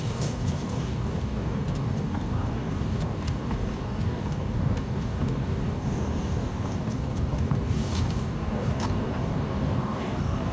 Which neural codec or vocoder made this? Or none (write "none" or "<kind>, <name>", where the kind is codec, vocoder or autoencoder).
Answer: codec, DAC